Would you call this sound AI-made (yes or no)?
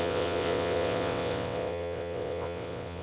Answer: yes